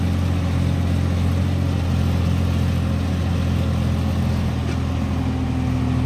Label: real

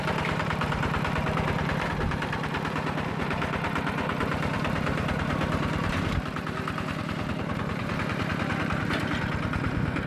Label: fake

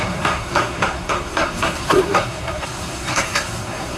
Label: fake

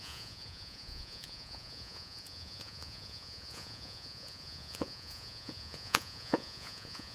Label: fake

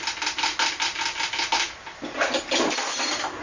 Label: real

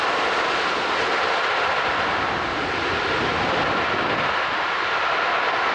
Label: real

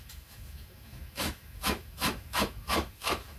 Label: fake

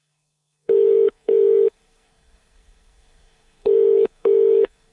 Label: fake